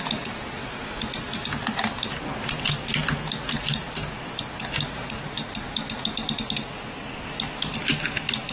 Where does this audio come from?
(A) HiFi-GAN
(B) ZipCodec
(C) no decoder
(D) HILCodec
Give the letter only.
C